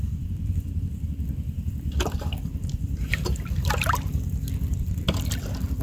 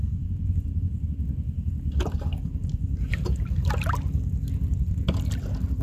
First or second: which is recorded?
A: second